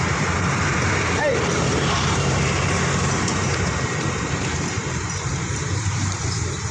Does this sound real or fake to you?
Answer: fake